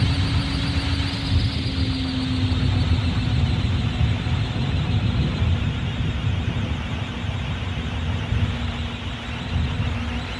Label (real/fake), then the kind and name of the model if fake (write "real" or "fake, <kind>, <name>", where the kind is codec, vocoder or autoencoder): real